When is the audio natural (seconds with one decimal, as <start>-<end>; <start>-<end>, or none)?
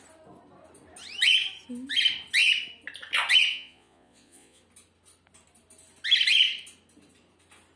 0.0-3.5; 4.6-7.8